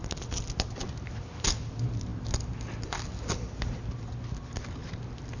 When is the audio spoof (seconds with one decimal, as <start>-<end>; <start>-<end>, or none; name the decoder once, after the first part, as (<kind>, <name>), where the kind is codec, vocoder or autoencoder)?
none

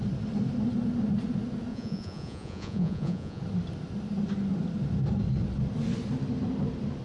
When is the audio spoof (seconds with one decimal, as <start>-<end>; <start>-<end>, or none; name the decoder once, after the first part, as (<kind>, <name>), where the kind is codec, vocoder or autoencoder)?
1.7-3.4 (vocoder, Vocos)